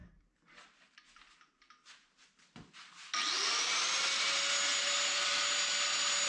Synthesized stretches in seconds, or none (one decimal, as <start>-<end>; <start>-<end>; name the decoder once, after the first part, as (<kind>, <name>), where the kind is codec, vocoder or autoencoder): none